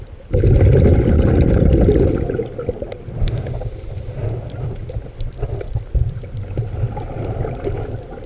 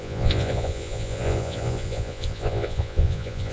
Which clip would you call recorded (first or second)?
first